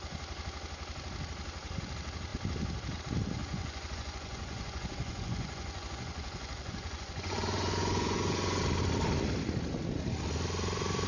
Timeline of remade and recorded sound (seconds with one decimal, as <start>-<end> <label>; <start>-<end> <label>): 0.0-3.4 recorded; 3.4-8.6 remade; 8.6-11.1 recorded